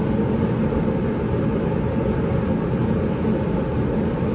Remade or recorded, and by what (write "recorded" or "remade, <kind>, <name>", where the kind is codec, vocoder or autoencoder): recorded